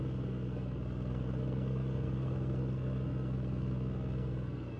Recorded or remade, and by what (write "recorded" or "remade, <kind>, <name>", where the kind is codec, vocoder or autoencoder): remade, codec, SNAC